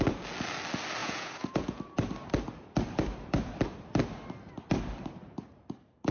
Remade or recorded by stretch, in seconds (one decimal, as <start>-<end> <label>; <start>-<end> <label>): 0.0-1.0 recorded; 1.0-1.8 remade; 1.8-6.1 recorded